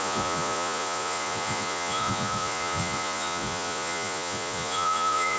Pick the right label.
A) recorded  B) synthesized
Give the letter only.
B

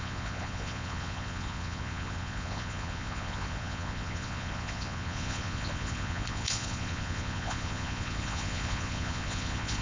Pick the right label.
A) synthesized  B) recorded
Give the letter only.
A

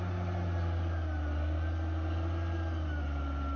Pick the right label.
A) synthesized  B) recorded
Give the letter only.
B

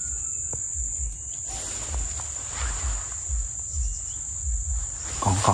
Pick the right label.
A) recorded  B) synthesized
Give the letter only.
A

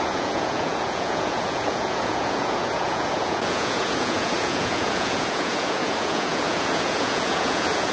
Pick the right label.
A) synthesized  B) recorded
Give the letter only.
A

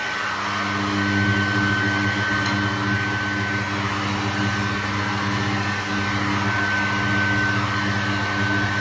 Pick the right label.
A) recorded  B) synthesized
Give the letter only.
A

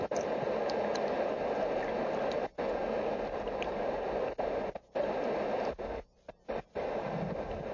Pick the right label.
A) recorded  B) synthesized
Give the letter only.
A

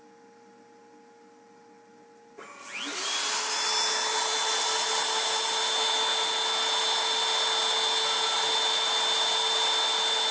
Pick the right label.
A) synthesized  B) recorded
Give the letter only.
B